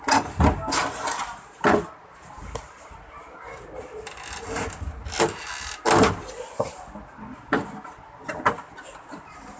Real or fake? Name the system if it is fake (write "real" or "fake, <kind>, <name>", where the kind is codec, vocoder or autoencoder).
real